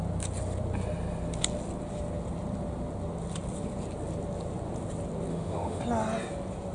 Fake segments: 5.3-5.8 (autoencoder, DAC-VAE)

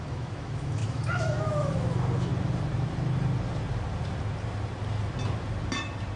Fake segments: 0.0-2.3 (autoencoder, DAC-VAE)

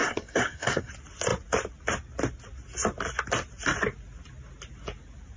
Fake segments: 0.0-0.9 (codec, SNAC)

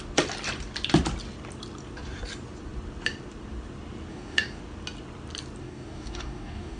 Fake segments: 4.1-4.6 (codec, DAC); 5.6-6.8

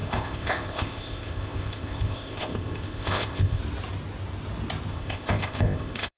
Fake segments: 0.0-3.6 (codec, ZipCodec); 4.9-6.2